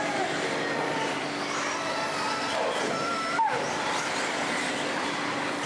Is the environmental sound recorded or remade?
recorded